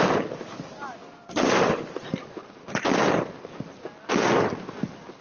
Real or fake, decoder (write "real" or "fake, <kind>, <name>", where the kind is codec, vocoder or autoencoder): real